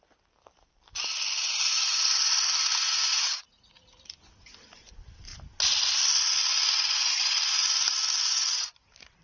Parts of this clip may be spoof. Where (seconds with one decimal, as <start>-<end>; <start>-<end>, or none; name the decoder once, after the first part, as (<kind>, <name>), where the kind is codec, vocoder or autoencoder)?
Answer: 3.1-4.1 (vocoder, Vocos)